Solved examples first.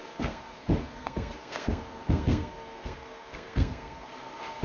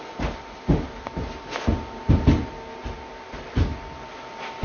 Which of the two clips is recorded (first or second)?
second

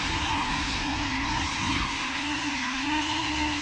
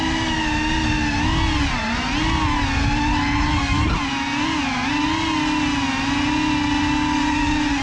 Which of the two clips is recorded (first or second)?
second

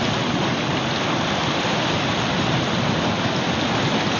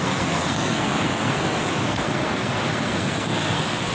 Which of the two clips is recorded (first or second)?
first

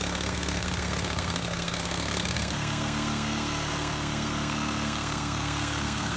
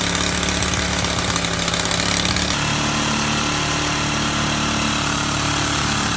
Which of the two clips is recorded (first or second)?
second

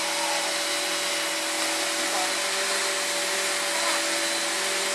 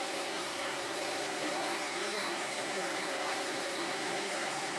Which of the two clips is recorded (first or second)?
first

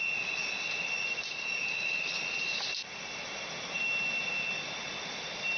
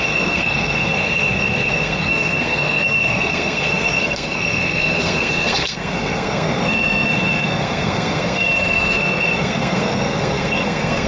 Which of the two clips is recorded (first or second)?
first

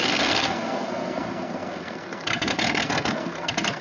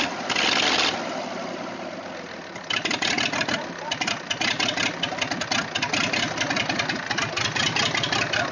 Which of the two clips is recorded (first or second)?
second